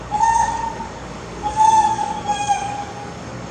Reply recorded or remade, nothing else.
remade